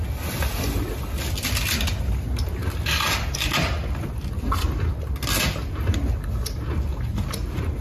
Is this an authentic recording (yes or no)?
yes